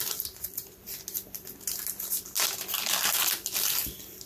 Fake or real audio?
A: real